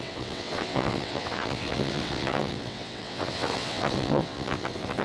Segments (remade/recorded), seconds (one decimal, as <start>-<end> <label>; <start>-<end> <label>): 0.0-5.0 remade